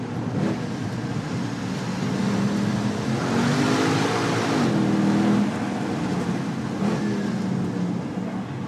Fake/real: real